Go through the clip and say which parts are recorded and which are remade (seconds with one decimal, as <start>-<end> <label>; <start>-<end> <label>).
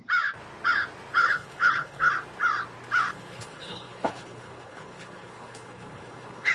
0.0-1.2 recorded; 1.2-2.1 remade; 2.1-3.1 recorded; 3.1-6.5 remade